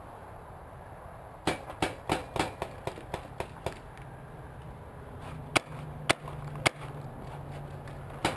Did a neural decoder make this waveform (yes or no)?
no